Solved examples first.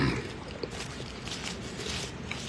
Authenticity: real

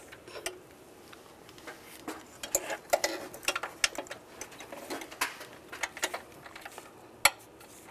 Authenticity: real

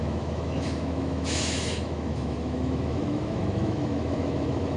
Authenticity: fake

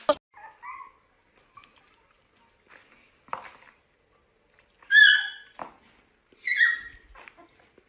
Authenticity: real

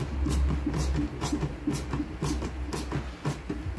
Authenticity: real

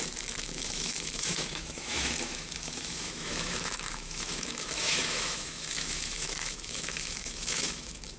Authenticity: fake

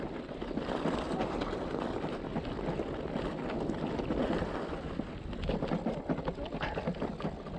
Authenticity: real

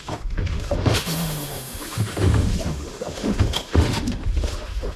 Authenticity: fake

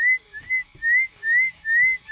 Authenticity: fake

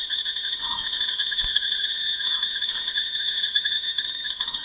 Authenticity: fake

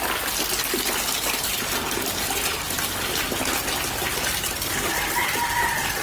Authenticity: real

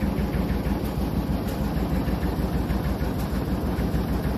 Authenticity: real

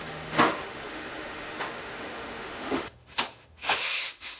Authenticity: fake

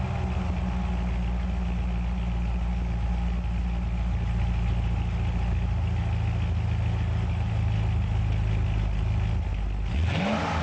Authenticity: real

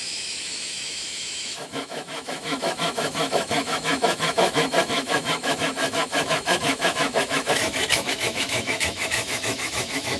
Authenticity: fake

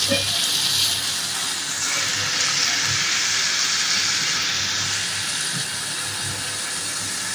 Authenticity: real